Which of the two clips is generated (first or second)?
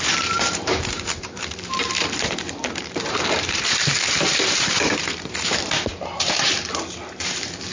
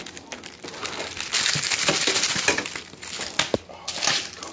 first